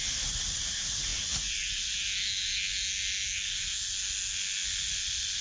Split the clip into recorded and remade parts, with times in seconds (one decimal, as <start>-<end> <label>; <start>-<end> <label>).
0.0-5.4 recorded